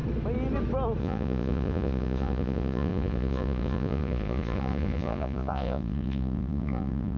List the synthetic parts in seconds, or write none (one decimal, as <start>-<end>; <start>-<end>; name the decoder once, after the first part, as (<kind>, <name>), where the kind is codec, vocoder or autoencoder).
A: 1.0-7.2 (vocoder, Vocos)